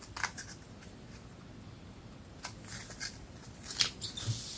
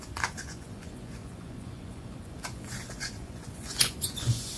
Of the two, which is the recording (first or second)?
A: first